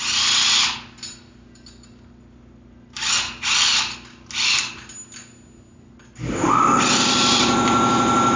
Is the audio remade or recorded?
recorded